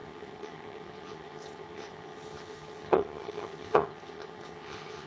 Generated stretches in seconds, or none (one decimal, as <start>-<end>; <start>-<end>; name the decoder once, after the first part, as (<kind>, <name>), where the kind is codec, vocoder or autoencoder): 0.0-5.1 (vocoder, HiFi-GAN)